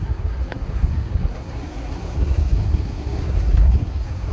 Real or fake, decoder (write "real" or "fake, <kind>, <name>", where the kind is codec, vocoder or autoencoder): fake, codec, SNAC